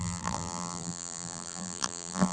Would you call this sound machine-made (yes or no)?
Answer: yes